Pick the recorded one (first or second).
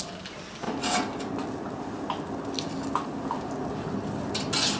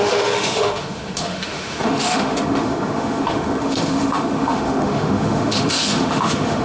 first